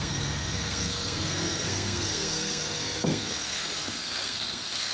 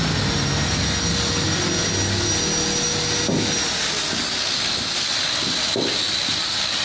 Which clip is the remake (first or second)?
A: first